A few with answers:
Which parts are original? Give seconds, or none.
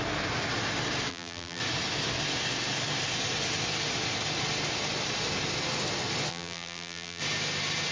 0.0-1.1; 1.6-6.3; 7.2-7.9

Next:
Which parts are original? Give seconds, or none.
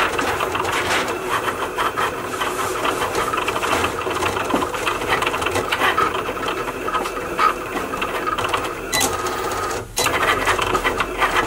2.7-3.2; 3.8-4.3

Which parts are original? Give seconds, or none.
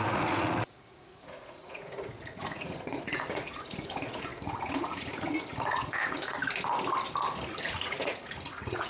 6.4-7.6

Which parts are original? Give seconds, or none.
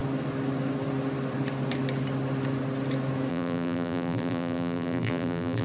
0.0-3.3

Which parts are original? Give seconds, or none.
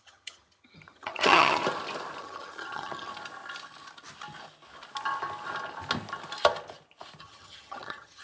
1.6-2.2; 3.1-7.2